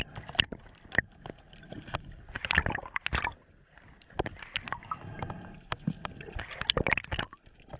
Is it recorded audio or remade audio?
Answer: recorded